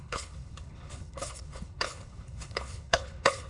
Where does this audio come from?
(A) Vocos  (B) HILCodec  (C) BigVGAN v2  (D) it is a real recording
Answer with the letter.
B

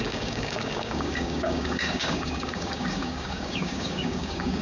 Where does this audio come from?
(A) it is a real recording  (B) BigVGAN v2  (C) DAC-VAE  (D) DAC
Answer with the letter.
D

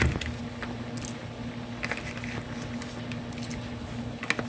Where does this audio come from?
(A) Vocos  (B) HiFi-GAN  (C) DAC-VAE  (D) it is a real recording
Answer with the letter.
D